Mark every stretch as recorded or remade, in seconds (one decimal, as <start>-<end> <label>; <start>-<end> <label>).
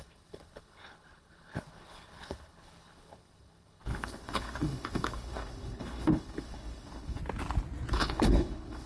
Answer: 0.0-7.2 remade; 7.2-7.9 recorded; 7.9-8.9 remade